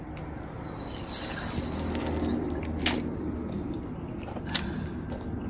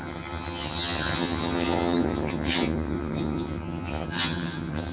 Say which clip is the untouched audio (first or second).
first